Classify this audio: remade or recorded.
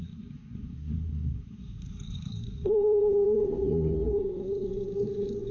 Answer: remade